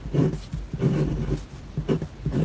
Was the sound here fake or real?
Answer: real